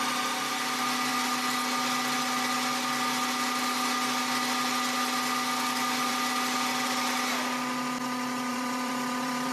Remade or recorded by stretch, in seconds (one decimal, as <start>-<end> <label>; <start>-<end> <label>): 0.0-8.5 recorded; 8.5-9.5 remade